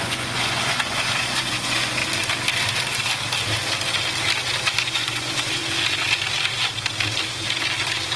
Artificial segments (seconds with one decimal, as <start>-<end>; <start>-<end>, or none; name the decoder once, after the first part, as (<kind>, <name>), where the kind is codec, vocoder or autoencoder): 0.0-2.0 (vocoder, Vocos); 4.8-5.6